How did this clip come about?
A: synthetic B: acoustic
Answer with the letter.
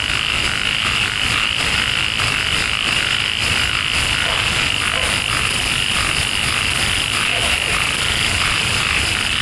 B